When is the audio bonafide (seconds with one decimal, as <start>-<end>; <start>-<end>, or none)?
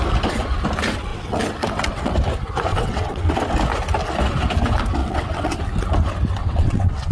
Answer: 0.0-1.1; 2.1-2.7; 3.3-5.0; 5.6-6.4